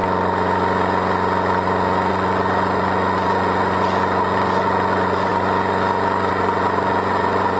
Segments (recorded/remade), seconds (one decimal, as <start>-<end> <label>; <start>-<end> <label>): 0.0-2.1 recorded; 2.1-5.3 remade; 5.3-6.3 recorded; 6.3-7.6 remade

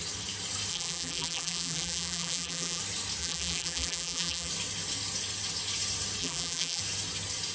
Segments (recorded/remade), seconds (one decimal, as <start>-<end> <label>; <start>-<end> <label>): 0.0-0.7 recorded; 0.7-2.8 remade; 2.8-3.2 recorded; 3.2-4.5 remade; 4.5-6.2 recorded; 6.2-6.8 remade; 6.8-7.5 recorded

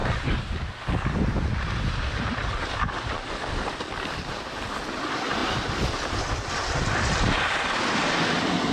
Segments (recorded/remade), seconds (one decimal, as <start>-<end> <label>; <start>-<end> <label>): 0.0-3.6 recorded; 3.6-5.4 remade; 5.4-6.2 recorded; 6.2-8.7 remade

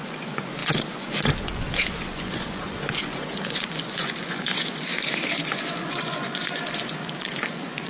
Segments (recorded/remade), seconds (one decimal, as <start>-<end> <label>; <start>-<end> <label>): 0.0-7.9 remade

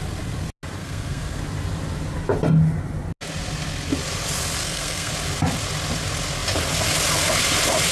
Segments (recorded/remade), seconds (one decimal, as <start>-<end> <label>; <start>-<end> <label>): 0.0-0.8 recorded; 0.8-1.4 remade; 1.4-4.6 recorded; 4.6-5.1 remade; 5.1-7.9 recorded

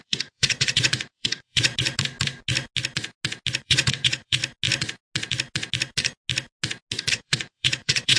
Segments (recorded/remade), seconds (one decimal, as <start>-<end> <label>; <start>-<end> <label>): 0.0-1.7 remade; 1.7-3.6 recorded; 3.6-4.4 remade; 4.4-7.1 recorded; 7.1-8.2 remade

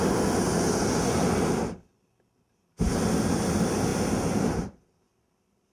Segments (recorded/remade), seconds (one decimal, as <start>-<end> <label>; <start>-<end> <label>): 0.0-5.7 recorded

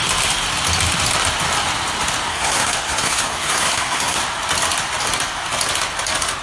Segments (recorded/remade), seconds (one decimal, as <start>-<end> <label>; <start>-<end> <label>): 0.0-2.3 recorded; 2.3-4.2 remade; 4.2-6.4 recorded